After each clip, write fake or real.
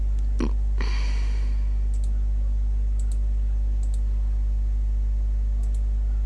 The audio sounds real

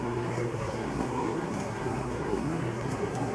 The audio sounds fake